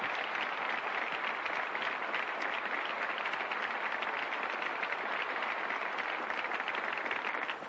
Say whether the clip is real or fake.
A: real